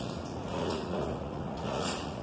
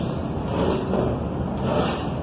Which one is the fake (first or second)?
first